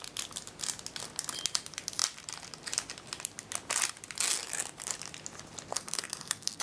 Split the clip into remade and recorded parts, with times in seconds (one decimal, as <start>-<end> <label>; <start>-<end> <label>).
0.0-5.7 recorded; 5.7-6.6 remade